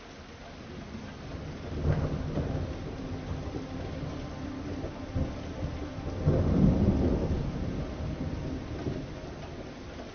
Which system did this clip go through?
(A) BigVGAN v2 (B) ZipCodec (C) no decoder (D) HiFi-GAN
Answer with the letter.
C